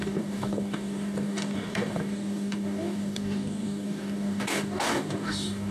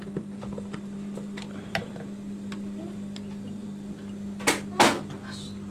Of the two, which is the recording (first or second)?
second